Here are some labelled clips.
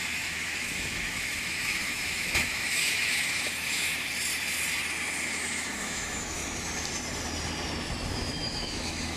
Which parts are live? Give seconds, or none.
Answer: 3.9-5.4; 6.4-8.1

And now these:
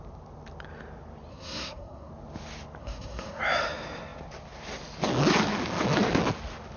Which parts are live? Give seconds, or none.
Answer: 0.0-1.3; 2.1-2.8; 3.4-6.8

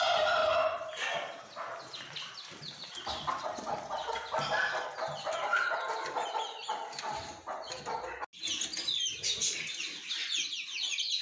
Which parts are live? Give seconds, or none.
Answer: 0.0-11.2